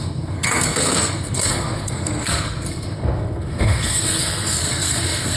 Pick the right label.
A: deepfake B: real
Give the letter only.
A